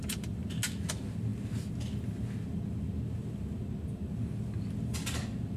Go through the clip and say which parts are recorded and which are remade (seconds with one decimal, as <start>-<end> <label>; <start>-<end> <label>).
0.0-5.6 recorded